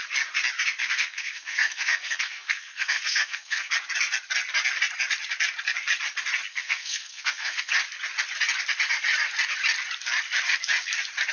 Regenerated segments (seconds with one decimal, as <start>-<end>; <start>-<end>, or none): 0.8-3.7; 6.5-7.7